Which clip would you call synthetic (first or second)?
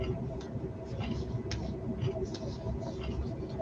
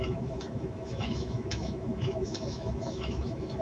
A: second